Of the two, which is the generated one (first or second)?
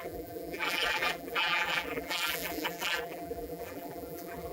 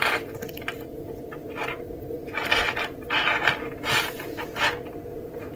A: first